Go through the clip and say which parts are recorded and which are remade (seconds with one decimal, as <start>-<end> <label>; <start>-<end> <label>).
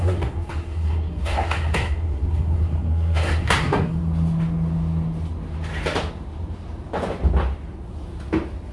0.0-4.0 remade; 4.0-8.7 recorded